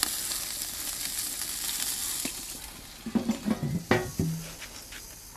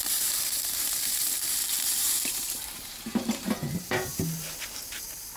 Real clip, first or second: first